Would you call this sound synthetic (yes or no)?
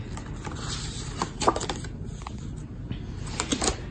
no